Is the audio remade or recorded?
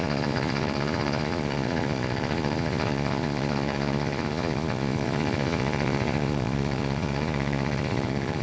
remade